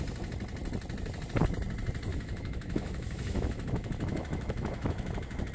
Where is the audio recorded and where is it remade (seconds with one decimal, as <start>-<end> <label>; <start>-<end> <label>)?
0.0-2.1 recorded; 2.1-5.5 remade